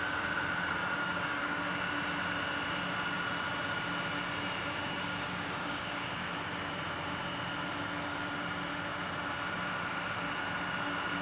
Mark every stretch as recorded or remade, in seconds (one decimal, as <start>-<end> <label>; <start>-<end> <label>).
0.0-1.0 recorded; 1.0-1.6 remade; 1.6-4.8 recorded; 4.8-6.1 remade; 6.1-11.2 recorded